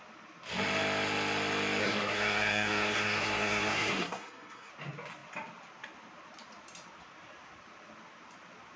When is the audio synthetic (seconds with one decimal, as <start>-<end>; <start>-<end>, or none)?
1.8-4.7